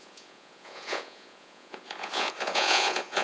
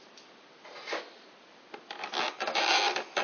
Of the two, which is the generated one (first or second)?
first